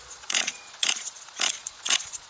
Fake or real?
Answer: fake